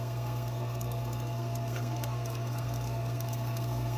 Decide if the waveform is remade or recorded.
remade